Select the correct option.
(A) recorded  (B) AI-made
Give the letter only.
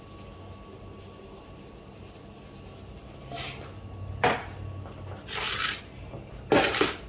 A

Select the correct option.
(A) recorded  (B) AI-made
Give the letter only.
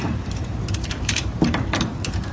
B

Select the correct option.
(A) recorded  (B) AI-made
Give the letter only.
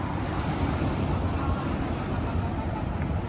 B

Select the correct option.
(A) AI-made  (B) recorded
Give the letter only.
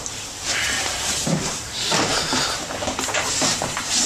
A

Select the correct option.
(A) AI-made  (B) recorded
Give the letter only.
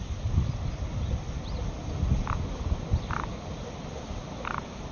B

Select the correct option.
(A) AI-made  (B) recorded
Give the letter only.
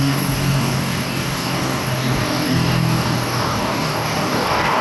A